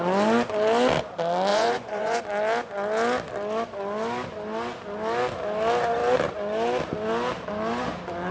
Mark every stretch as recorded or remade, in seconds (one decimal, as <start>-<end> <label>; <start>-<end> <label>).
0.0-1.5 recorded; 1.5-2.2 remade; 2.2-8.3 recorded